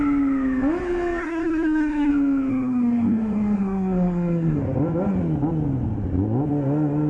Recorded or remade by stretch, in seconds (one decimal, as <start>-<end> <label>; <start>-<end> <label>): 0.0-1.2 recorded; 1.2-2.1 remade; 2.1-2.5 recorded; 2.5-4.6 remade; 4.6-7.1 recorded